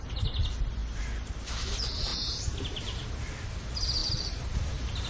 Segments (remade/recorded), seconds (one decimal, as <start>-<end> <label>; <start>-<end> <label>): 0.0-2.1 recorded; 2.1-3.0 remade; 3.0-4.0 recorded; 4.0-5.1 remade